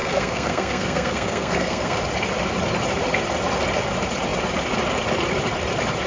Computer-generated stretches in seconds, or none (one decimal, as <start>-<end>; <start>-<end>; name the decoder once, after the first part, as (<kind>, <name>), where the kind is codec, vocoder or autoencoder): 0.0-2.0 (codec, SNAC)

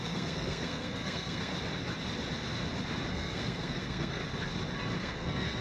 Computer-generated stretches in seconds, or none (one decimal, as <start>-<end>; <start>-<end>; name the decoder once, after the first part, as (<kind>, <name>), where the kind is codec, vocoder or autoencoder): 0.0-1.5 (codec, SNAC); 3.1-4.2; 5.0-5.6

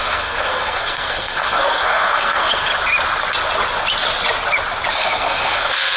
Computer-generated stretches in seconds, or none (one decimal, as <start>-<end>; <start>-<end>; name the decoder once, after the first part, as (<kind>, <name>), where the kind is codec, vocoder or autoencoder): 0.0-2.7 (codec, SNAC); 4.9-6.0

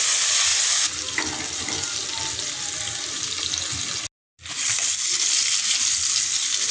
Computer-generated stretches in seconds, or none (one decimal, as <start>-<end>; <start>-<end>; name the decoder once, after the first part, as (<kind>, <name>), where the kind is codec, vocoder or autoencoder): none

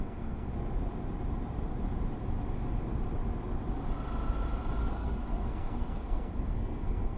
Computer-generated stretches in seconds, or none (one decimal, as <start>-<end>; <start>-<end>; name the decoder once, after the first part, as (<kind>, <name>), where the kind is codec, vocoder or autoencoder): 0.0-0.5 (codec, SNAC); 4.8-7.2